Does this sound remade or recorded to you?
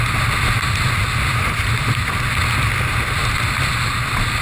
recorded